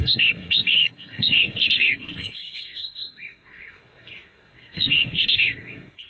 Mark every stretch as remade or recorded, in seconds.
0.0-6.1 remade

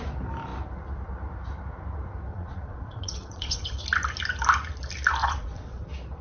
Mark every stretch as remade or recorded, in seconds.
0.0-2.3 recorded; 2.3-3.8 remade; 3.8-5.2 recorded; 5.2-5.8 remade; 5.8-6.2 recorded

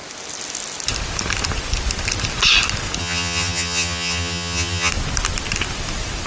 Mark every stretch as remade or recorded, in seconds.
0.0-3.0 recorded; 3.0-4.9 remade; 4.9-6.3 recorded